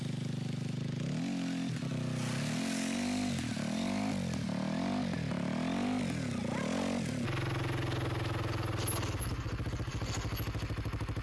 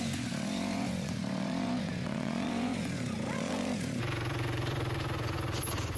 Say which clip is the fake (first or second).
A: second